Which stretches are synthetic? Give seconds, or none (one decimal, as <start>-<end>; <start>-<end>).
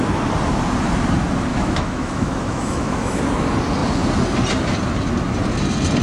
1.5-3.2